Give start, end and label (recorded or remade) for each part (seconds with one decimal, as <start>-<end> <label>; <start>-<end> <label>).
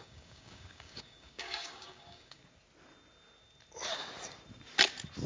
0.0-2.4 remade; 2.4-5.3 recorded